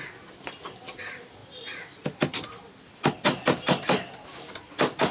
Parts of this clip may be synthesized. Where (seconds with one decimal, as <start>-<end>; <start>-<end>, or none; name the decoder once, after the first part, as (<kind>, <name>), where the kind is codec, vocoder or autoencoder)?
none

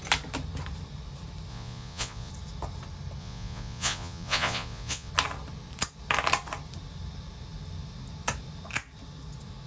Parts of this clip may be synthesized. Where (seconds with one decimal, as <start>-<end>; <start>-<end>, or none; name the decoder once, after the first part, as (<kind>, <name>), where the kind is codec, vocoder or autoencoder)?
1.5-2.3 (vocoder, Vocos); 3.2-5.1

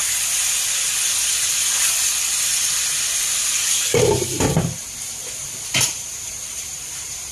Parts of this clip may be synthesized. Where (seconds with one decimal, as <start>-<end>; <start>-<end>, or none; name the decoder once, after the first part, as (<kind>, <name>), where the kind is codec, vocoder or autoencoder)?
none

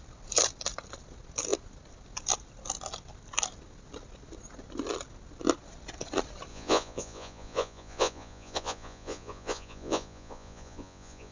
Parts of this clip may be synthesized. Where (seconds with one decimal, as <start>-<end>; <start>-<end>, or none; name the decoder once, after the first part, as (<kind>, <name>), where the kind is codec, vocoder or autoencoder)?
6.5-11.3 (vocoder, Vocos)

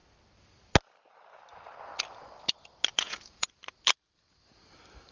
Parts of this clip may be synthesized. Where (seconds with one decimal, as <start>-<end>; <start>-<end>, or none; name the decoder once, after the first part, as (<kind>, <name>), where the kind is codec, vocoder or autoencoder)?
2.9-3.5 (vocoder, Vocos)

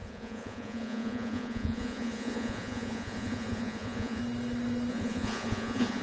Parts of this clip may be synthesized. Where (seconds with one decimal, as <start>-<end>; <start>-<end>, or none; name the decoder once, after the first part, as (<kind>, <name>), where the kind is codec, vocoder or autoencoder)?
0.0-4.2 (vocoder, Vocos); 4.9-6.0

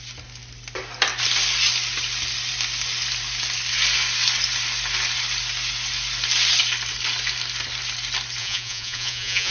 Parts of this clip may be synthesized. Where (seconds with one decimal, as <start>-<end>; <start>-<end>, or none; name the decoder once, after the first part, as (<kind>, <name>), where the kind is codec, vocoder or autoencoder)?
8.4-9.5 (vocoder, Vocos)

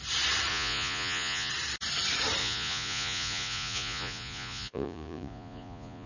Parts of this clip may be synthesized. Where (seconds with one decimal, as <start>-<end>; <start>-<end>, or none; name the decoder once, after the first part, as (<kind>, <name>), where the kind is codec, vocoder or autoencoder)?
0.5-1.5 (vocoder, Vocos); 2.4-6.1